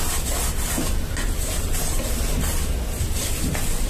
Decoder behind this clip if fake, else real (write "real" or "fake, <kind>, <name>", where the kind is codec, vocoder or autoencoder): real